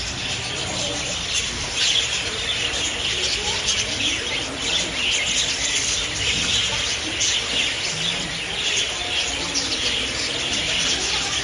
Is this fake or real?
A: real